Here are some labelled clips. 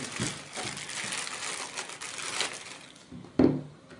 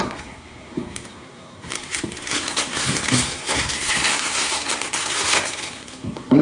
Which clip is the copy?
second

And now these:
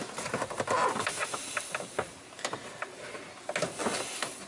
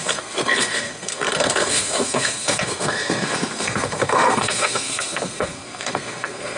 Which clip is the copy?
second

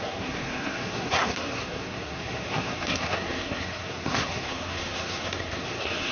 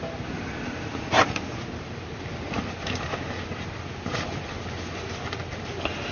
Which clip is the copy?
first